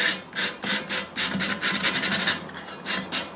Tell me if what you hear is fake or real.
real